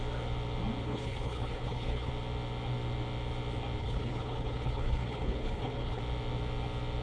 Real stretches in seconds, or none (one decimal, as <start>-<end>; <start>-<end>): 0.0-0.8; 2.1-3.8; 6.0-7.0

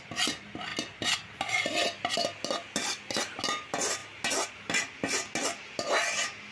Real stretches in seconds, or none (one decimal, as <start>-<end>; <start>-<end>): 0.0-6.5